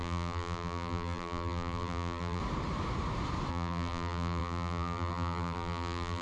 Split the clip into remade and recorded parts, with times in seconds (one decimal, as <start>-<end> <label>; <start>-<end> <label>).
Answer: 0.0-2.4 remade; 2.4-3.5 recorded; 3.5-6.2 remade

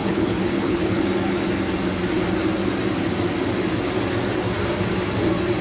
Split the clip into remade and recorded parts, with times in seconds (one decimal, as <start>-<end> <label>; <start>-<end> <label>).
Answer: 0.0-1.0 remade; 1.0-5.6 recorded